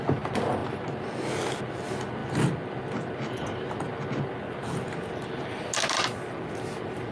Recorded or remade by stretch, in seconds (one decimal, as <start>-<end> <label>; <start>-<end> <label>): 0.0-7.1 recorded